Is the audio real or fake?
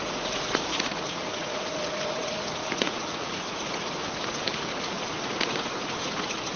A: fake